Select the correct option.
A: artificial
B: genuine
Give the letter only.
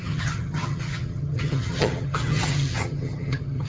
A